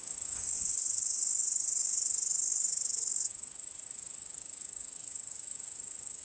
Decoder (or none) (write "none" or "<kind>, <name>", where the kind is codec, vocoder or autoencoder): codec, DAC